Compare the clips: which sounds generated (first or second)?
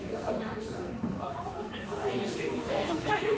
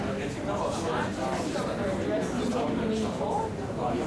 first